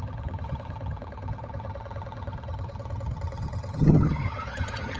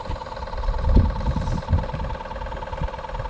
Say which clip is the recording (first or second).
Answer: second